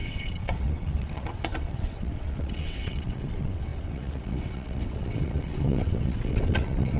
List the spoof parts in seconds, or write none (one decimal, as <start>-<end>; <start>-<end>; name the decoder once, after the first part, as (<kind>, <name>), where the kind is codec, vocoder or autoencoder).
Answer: 0.0-7.0 (vocoder, WaveNeXt)